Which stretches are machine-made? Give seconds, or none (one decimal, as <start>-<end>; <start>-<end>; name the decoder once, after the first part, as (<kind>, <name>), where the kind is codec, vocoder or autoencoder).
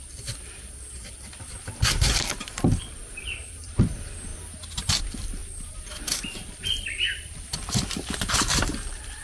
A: 0.0-4.3 (vocoder, BigVGAN v2); 5.0-9.2